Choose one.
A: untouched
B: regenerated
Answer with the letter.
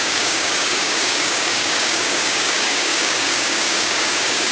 B